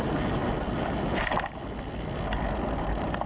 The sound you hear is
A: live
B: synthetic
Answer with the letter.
A